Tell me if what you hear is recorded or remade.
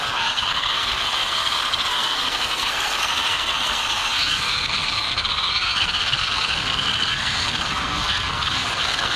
remade